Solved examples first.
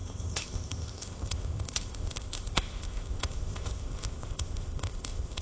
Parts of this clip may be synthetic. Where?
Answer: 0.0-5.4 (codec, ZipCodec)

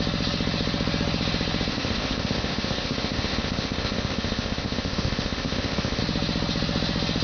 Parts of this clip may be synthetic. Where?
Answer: 1.7-6.0 (codec, ZipCodec)

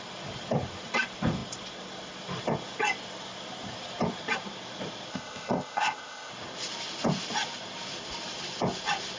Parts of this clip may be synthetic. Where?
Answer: 5.1-6.3 (codec, ZipCodec)